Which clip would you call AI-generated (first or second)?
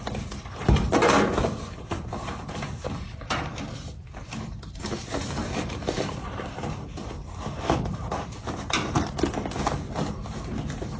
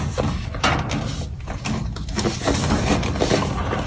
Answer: first